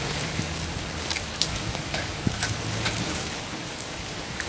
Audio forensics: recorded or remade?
remade